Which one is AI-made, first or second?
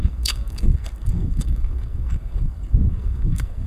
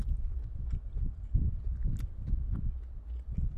first